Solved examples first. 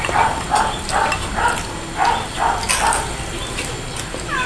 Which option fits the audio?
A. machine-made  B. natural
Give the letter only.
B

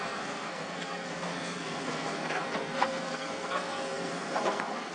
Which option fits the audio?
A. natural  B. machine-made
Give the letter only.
B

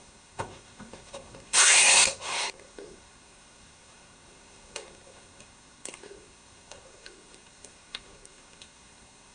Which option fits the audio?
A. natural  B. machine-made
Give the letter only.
B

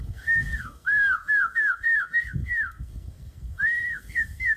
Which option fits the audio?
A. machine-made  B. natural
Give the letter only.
A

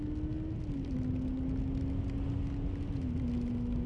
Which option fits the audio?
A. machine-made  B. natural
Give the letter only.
B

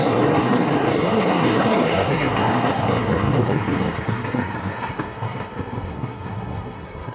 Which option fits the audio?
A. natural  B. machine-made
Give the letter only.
B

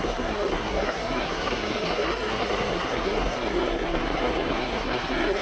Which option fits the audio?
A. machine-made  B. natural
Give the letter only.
A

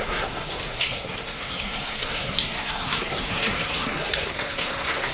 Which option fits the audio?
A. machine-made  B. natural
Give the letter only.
A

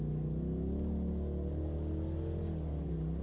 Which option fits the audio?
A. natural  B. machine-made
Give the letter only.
A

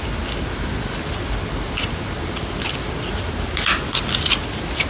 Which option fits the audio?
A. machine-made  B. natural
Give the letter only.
B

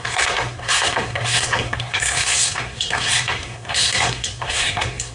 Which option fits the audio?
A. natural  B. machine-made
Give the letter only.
B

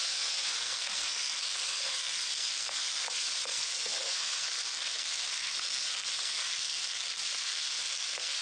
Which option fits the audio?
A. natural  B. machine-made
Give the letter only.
B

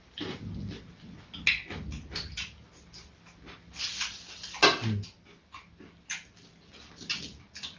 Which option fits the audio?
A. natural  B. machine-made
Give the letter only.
A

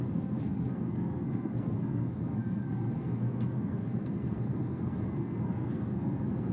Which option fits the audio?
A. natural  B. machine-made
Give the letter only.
B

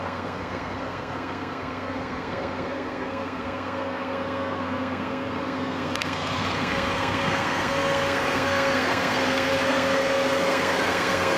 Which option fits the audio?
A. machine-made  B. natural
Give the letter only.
A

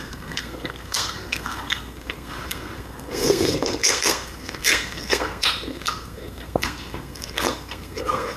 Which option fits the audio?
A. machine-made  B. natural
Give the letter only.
A